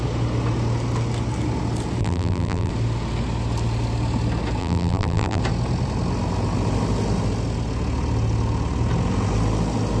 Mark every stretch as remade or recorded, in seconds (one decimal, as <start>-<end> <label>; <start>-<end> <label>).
0.0-2.0 recorded; 2.0-2.7 remade; 2.7-4.6 recorded; 4.6-5.4 remade; 5.4-10.0 recorded